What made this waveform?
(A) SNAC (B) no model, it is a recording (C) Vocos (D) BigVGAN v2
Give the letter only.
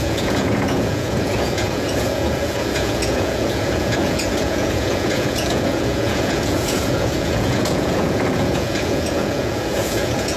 C